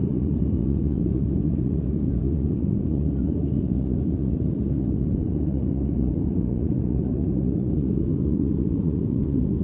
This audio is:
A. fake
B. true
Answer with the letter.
A